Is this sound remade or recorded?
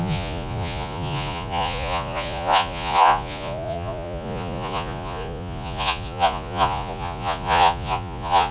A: remade